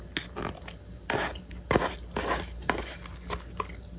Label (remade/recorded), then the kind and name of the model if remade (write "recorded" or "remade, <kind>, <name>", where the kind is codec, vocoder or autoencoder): recorded